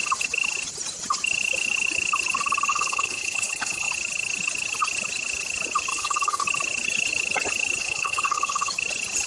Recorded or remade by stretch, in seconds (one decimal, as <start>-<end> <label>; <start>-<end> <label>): 0.0-2.7 recorded; 2.7-3.9 remade; 3.9-5.9 recorded; 5.9-6.4 remade; 6.4-7.8 recorded; 7.8-8.7 remade; 8.7-9.3 recorded